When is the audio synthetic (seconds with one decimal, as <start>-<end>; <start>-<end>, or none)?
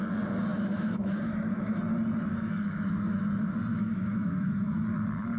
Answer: 0.5-1.8; 2.3-3.3; 3.7-4.8